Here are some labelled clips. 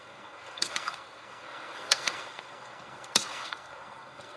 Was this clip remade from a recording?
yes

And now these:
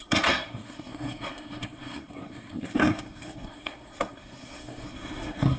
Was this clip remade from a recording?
yes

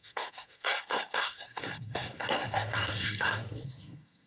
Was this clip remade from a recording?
yes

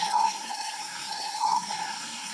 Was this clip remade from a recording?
yes